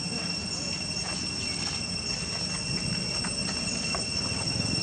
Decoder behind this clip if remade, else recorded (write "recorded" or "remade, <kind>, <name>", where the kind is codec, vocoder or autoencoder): recorded